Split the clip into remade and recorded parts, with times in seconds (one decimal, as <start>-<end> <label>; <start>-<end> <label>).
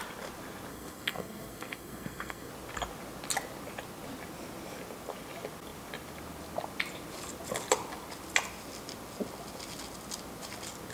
0.0-0.7 recorded; 0.7-2.5 remade; 2.5-10.9 recorded